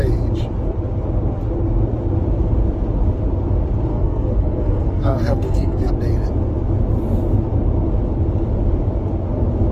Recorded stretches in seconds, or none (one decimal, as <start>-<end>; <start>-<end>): 0.0-3.9; 5.9-9.7